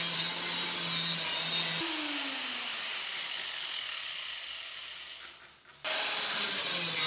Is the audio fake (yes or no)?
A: no